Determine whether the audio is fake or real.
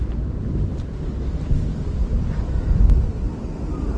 real